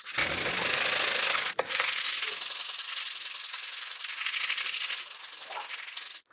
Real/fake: real